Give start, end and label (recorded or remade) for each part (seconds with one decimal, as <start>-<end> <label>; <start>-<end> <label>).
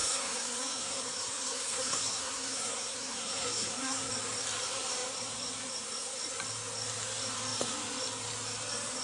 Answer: 0.0-4.1 remade; 4.1-9.0 recorded